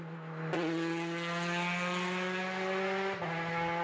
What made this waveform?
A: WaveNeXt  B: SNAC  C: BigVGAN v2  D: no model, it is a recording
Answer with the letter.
D